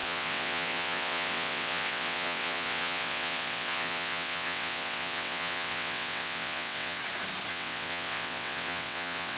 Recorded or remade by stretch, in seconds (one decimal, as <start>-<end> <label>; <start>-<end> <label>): 0.0-7.0 remade; 7.0-7.5 recorded; 7.5-9.4 remade